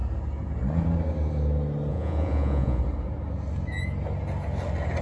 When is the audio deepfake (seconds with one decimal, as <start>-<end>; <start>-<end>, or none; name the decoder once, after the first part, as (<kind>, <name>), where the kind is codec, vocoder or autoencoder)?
1.9-2.8 (vocoder, Vocos)